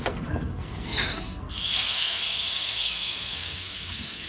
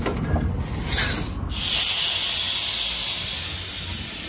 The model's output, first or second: first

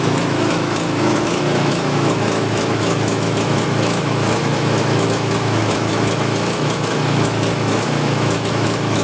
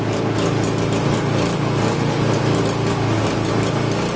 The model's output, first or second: first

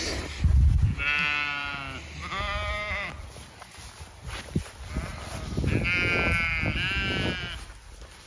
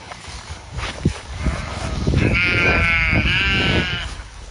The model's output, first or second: second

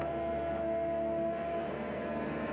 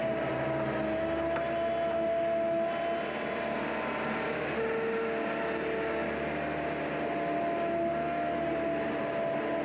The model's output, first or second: first